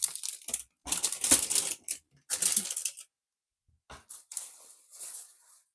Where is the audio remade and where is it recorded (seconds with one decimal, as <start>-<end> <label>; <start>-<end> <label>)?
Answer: 0.0-5.7 recorded